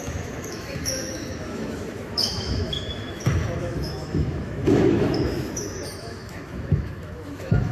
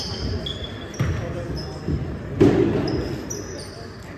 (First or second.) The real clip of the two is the second